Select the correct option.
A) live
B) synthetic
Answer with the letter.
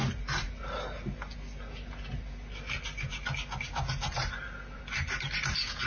A